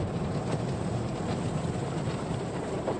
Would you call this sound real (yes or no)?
no